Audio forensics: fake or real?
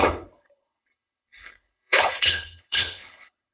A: fake